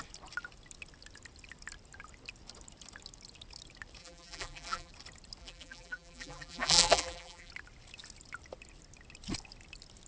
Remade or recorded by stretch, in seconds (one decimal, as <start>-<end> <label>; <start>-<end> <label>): 0.0-4.0 recorded; 4.0-4.9 remade; 4.9-5.4 recorded; 5.4-7.5 remade; 7.5-10.1 recorded